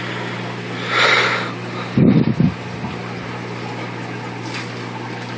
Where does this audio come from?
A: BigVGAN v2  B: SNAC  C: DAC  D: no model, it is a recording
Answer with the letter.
D